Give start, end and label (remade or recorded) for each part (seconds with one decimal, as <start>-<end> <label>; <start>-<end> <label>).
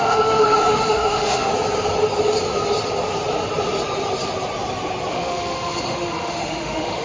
0.0-1.5 remade; 1.5-5.1 recorded; 5.1-7.0 remade